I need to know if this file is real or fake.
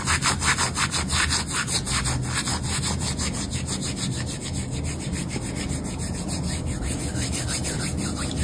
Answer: real